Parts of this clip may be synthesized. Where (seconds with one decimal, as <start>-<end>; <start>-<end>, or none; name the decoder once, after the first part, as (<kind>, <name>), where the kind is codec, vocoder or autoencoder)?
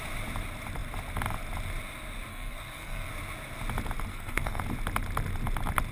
2.3-3.1 (codec, SNAC); 4.1-4.6